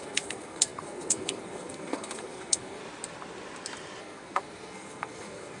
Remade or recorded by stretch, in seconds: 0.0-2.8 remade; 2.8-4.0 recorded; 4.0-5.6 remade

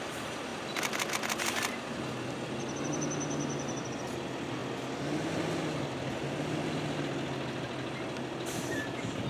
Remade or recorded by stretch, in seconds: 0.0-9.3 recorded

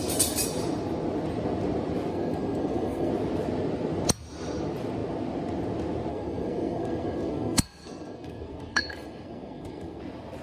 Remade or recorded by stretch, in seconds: 0.0-2.1 recorded; 2.1-3.1 remade; 3.1-6.1 recorded; 6.1-10.0 remade; 10.0-10.4 recorded

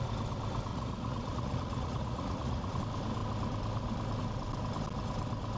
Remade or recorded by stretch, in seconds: 0.0-0.7 recorded; 0.7-2.8 remade; 2.8-5.6 recorded

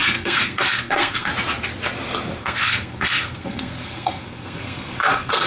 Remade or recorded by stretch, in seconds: 0.0-1.3 remade; 1.3-2.4 recorded; 2.4-5.5 remade

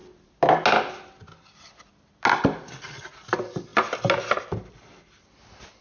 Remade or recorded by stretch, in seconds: 0.0-5.8 recorded

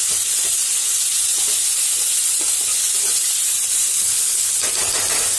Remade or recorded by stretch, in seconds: 0.0-3.9 recorded; 3.9-4.5 remade; 4.5-5.4 recorded